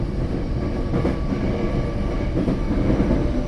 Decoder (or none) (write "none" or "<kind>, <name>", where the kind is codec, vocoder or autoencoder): none